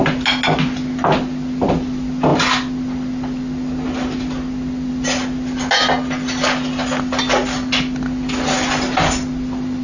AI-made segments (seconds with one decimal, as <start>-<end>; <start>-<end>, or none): none